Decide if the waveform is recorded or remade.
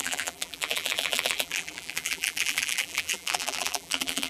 remade